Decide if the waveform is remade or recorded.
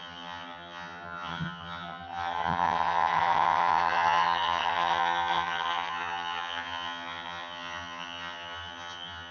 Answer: remade